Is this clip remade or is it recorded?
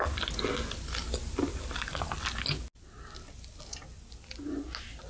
recorded